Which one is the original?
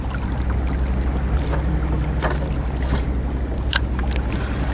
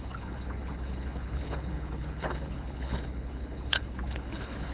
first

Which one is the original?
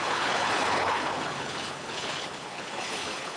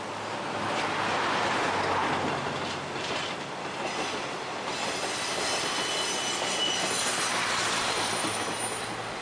second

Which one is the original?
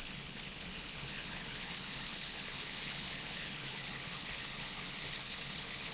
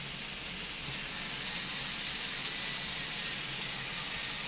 second